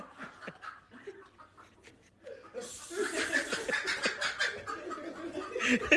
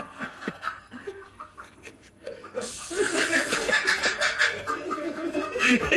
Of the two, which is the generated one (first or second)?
second